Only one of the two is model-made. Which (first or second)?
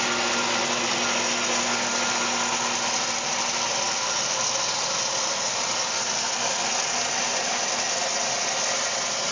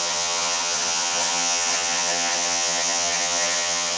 second